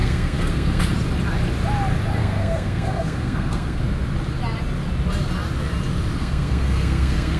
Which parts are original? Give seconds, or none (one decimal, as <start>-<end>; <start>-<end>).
0.8-2.2; 3.8-6.2